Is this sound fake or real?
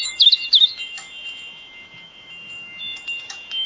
fake